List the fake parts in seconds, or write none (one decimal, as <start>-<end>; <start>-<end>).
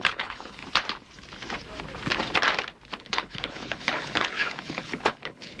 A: 0.0-0.6; 3.0-5.6